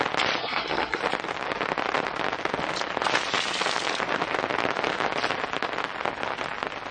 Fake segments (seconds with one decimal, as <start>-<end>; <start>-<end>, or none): 0.4-1.0